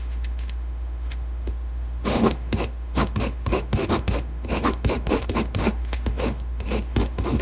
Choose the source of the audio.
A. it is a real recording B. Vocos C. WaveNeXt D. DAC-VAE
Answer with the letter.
D